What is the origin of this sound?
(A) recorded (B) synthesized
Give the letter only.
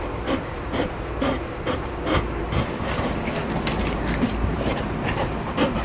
B